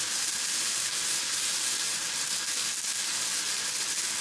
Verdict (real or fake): real